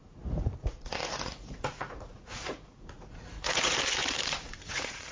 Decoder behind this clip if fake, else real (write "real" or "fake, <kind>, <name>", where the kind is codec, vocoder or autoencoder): fake, vocoder, Vocos